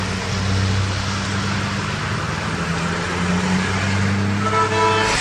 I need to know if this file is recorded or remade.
recorded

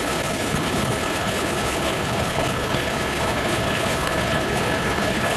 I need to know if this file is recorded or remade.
remade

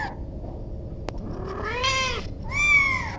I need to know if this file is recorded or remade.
recorded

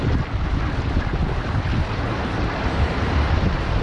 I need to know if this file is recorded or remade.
recorded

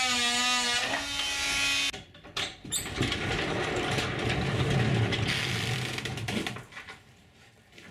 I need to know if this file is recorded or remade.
recorded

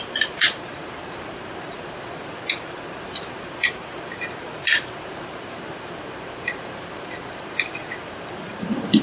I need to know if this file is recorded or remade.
remade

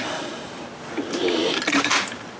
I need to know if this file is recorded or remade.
recorded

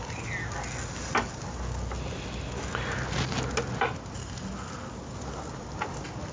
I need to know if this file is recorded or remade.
recorded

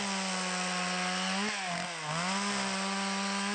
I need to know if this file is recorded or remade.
recorded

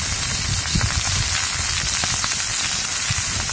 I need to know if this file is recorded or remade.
recorded